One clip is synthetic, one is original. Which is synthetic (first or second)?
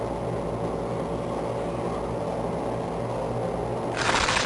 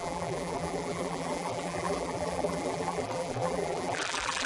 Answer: second